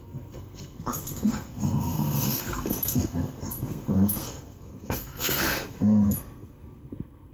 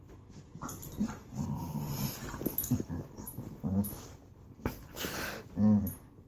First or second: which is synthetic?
first